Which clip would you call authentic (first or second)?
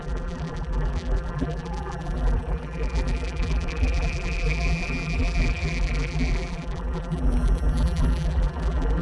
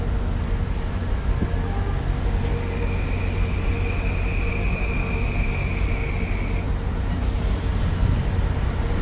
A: second